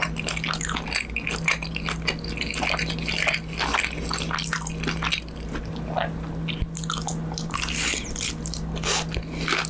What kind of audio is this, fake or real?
real